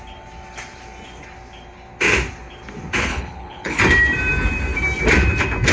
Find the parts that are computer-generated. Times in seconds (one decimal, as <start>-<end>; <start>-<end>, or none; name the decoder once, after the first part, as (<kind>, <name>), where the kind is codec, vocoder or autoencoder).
3.1-3.8 (codec, HILCodec)